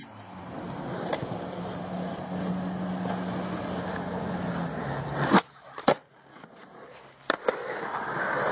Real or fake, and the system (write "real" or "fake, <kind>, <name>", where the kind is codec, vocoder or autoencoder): real